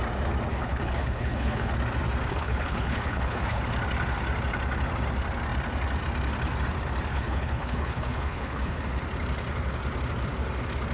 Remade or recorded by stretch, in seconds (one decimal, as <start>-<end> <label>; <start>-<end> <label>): 0.0-0.5 recorded; 0.5-1.7 remade; 1.7-2.3 recorded; 2.3-3.6 remade; 3.6-7.1 recorded; 7.1-8.8 remade; 8.8-10.9 recorded